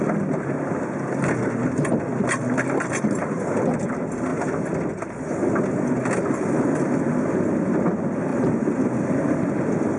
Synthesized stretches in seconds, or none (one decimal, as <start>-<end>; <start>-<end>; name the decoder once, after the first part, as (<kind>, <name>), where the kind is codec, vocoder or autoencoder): 0.0-4.3 (vocoder, BigVGAN v2); 6.3-10.0